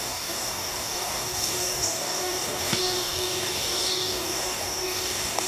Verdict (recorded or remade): remade